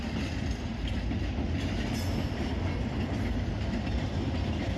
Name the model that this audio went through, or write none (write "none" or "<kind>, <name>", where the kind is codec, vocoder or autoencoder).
none